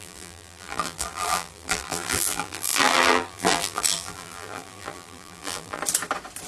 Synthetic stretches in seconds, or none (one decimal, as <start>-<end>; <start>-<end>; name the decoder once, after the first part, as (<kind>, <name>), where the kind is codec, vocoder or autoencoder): 0.0-5.8 (vocoder, BigVGAN v2)

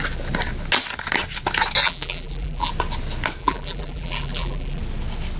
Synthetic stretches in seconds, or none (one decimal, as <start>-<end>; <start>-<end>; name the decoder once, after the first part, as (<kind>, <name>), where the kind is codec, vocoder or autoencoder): 1.8-2.7 (vocoder, BigVGAN v2); 3.4-4.8

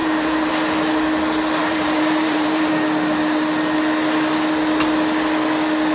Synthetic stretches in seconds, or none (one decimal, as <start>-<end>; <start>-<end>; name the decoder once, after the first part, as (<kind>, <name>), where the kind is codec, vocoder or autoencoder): 0.0-0.5 (vocoder, BigVGAN v2); 1.6-2.7